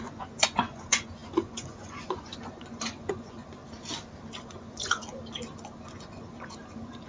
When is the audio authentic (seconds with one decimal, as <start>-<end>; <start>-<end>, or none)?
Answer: 3.6-4.4; 5.0-5.8

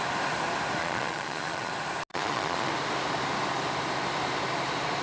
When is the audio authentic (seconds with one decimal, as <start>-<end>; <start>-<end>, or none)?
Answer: 0.0-0.8; 1.7-2.1; 2.7-5.0

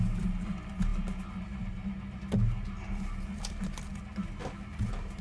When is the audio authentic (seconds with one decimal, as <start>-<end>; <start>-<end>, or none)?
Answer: 0.0-5.2

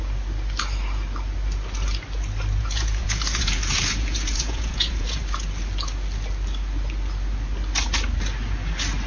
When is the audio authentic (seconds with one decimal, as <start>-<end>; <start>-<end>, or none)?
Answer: 0.0-2.6; 5.2-9.1

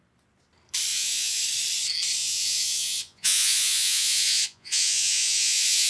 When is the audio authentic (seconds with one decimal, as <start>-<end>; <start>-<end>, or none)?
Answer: 0.0-0.9; 1.4-2.2